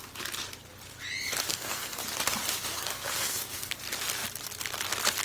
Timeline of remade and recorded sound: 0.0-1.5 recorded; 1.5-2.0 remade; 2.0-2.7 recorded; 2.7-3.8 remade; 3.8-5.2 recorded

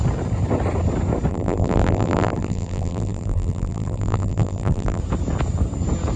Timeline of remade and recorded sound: 0.0-1.3 recorded; 1.3-5.0 remade; 5.0-6.2 recorded

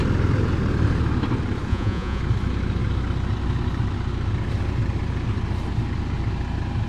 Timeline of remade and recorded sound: 0.0-1.7 recorded; 1.7-2.2 remade; 2.2-6.9 recorded

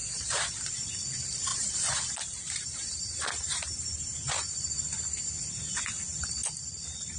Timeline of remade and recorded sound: 0.0-0.7 remade; 0.7-1.5 recorded; 1.5-5.8 remade; 5.8-7.2 recorded

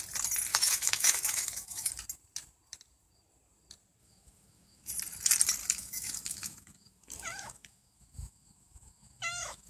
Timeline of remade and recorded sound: 0.0-0.5 recorded; 0.5-1.9 remade; 1.9-4.0 recorded; 4.0-4.9 remade; 4.9-5.6 recorded; 5.6-9.7 remade

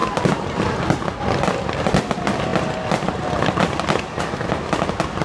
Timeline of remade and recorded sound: 0.0-5.2 recorded

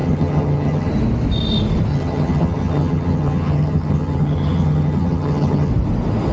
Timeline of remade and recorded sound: 0.0-0.9 remade; 0.9-1.9 recorded; 1.9-5.7 remade; 5.7-6.3 recorded

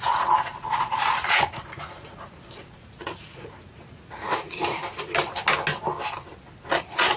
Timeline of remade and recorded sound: 0.0-4.8 remade; 4.8-6.8 recorded; 6.8-7.2 remade